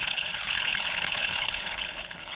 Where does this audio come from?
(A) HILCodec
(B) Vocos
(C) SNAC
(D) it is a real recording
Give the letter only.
A